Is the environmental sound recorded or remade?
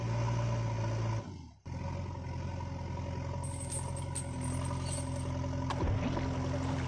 recorded